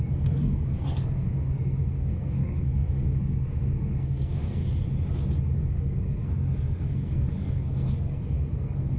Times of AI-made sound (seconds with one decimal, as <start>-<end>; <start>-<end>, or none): 0.0-4.6; 5.5-9.0